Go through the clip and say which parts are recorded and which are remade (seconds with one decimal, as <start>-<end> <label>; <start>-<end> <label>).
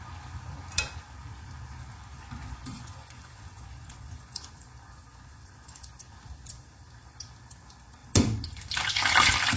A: 0.0-2.1 recorded; 2.1-6.1 remade; 6.1-9.6 recorded